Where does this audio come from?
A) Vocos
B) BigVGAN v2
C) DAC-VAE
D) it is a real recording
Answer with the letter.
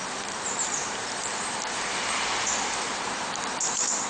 B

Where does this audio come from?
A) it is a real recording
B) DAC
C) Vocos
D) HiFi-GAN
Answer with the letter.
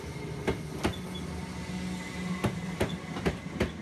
A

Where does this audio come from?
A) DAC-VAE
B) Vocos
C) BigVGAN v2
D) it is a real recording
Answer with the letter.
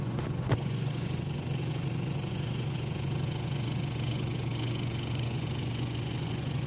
B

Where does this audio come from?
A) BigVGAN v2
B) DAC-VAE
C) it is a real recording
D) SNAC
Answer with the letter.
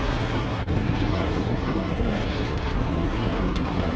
D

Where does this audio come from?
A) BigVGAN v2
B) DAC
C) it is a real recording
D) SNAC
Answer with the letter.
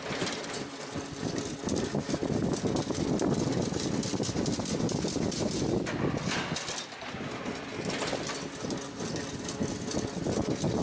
C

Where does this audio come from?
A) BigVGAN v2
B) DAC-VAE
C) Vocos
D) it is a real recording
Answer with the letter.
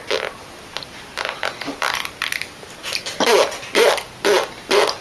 D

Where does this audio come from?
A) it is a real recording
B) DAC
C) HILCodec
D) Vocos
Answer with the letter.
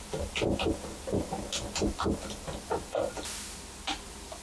A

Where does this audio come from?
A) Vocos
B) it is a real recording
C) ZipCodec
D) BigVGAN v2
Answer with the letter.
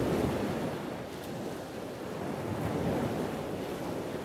B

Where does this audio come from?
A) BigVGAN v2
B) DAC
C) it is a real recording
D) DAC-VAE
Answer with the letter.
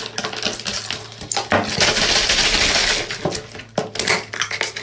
C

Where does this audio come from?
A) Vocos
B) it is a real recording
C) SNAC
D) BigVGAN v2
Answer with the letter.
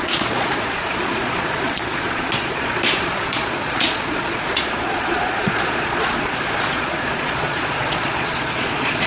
A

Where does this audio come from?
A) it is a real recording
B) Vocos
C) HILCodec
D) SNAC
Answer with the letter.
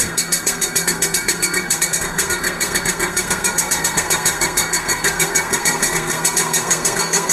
D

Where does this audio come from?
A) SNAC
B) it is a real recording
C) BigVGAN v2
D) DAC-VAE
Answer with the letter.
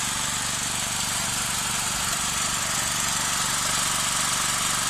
B